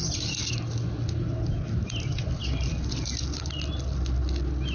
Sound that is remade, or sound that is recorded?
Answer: recorded